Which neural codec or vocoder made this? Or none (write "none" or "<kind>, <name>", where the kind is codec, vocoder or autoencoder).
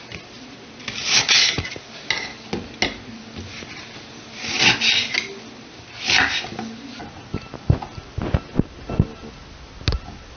none